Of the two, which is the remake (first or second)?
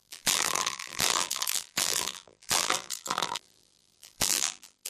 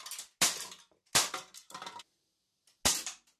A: first